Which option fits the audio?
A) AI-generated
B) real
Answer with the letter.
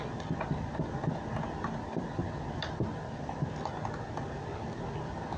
B